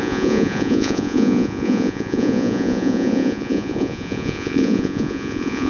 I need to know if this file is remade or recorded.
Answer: remade